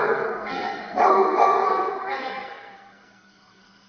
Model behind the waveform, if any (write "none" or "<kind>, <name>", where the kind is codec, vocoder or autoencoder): codec, SNAC